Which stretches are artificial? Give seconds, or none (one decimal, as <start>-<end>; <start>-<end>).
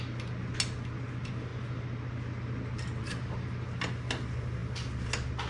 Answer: none